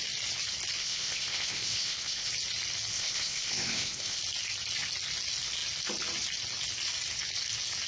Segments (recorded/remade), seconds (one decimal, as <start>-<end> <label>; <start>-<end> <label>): 0.0-0.8 recorded; 0.8-2.3 remade; 2.3-2.9 recorded; 2.9-4.2 remade; 4.2-7.9 recorded